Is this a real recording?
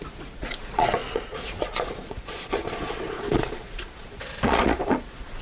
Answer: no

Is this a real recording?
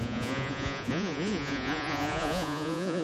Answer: no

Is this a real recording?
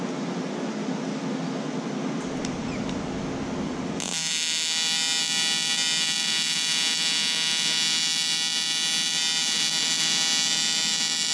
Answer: yes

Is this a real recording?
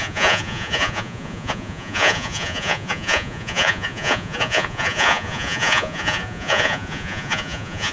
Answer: no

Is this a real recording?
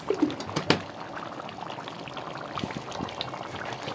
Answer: yes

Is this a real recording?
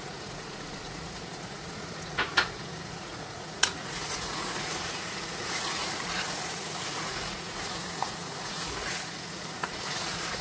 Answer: no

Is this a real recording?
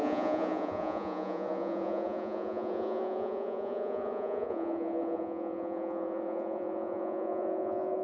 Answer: no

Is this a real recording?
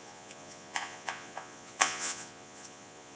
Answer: no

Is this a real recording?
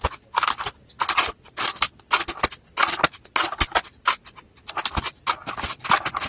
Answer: yes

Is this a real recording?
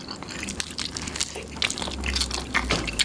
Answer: yes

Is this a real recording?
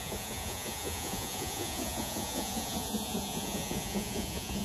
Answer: no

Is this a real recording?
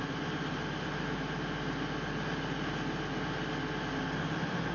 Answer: yes